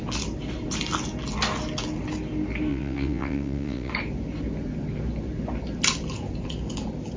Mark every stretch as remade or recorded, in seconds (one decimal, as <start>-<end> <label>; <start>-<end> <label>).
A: 0.0-2.7 recorded; 2.7-3.9 remade; 3.9-7.2 recorded